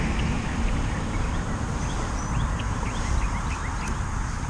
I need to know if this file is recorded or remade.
recorded